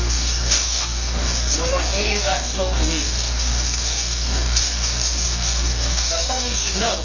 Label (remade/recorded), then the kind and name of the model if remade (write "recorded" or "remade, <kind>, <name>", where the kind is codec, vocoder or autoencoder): remade, codec, DAC